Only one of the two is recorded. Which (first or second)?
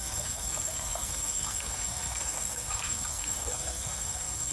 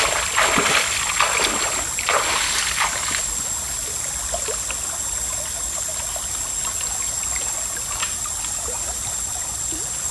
second